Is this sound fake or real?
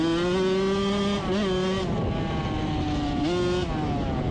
real